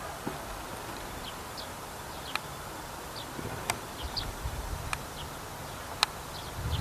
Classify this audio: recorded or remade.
recorded